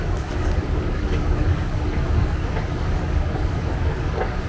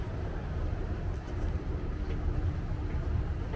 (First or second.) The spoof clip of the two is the first